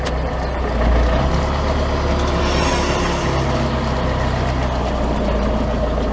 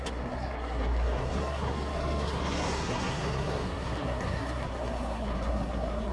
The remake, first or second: second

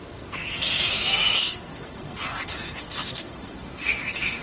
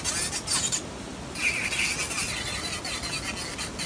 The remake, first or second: first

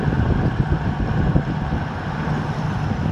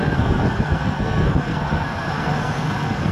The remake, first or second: second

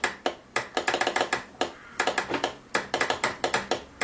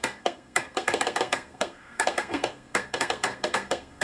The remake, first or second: second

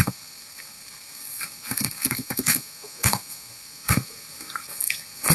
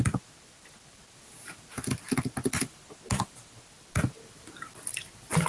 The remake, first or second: first